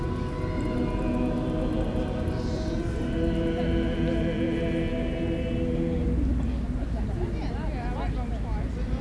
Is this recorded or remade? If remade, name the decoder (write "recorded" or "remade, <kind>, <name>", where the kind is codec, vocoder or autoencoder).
recorded